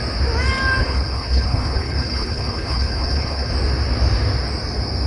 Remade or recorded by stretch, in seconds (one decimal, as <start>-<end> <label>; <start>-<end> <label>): 0.0-0.8 recorded; 0.8-3.5 remade; 3.5-5.1 recorded